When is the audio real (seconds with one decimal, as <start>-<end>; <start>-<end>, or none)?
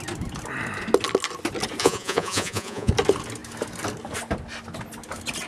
0.0-1.8; 2.9-5.5